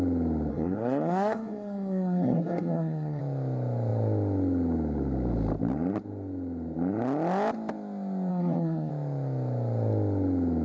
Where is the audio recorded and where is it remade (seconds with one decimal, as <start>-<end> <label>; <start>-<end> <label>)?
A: 0.0-0.5 recorded; 0.5-3.2 remade; 3.2-8.3 recorded; 8.3-8.9 remade; 8.9-10.6 recorded

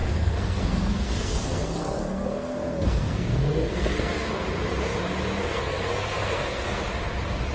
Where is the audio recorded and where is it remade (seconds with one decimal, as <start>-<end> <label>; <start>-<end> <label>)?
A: 0.0-4.5 remade; 4.5-5.4 recorded; 5.4-6.8 remade; 6.8-7.5 recorded

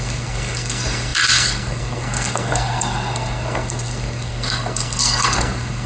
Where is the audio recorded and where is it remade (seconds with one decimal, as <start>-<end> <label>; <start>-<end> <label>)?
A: 0.0-5.9 remade

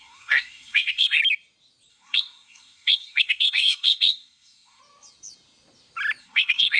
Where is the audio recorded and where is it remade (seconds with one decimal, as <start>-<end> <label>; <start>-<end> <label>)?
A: 0.0-1.2 remade; 1.2-1.9 recorded; 1.9-4.8 remade; 4.8-6.2 recorded; 6.2-6.8 remade